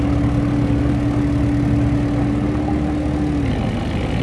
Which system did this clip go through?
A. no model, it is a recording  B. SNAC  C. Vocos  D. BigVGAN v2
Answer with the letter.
A